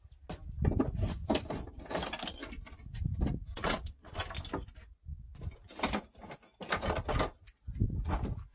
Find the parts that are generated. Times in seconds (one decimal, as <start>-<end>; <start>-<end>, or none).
3.5-4.2